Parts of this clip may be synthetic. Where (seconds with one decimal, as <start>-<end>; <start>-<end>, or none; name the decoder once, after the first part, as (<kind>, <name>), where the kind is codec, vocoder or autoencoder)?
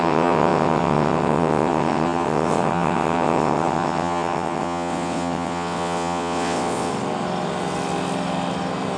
0.0-6.9 (vocoder, WaveNeXt)